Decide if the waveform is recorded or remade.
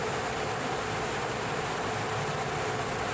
recorded